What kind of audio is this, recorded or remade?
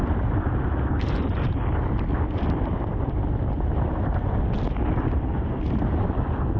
recorded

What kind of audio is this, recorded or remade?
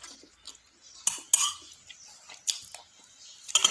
recorded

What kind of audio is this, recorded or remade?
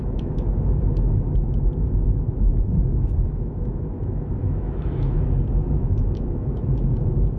remade